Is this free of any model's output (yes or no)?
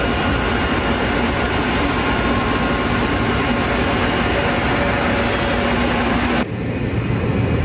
yes